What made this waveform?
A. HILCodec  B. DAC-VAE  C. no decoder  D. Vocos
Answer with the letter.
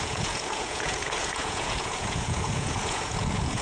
D